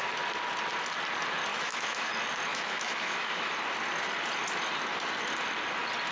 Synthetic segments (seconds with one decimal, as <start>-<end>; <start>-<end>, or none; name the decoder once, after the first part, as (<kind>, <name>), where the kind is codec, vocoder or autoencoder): 1.5-2.1 (autoencoder, DAC-VAE); 2.5-3.5